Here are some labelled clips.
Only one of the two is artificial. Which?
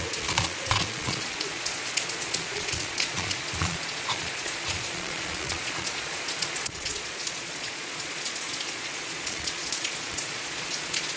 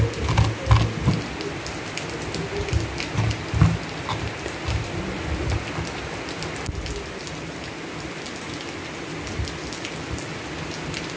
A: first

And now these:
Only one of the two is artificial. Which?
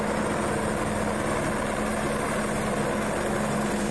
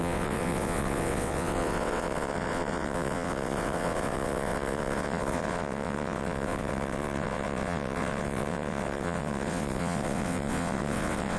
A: second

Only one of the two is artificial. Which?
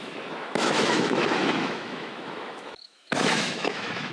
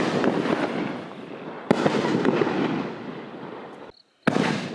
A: first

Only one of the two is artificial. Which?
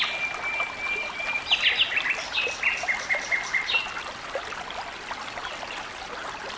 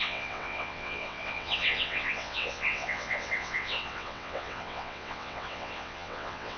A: second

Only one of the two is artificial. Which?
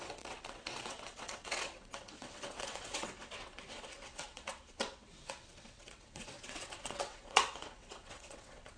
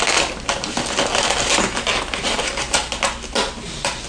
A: first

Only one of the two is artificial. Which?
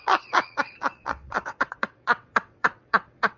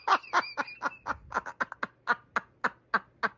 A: first